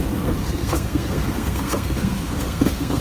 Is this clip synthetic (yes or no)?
yes